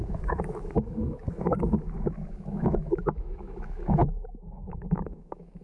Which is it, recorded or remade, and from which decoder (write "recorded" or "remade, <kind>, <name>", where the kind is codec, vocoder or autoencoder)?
remade, autoencoder, DAC-VAE